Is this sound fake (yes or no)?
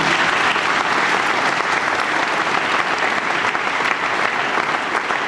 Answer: no